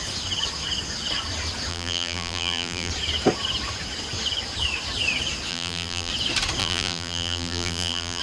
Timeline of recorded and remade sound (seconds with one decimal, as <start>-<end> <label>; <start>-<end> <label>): 0.0-1.7 recorded; 1.7-2.9 remade; 2.9-5.5 recorded; 5.5-6.1 remade; 6.1-6.6 recorded; 6.6-8.2 remade